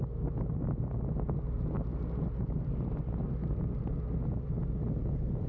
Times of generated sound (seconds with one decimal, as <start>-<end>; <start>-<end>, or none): none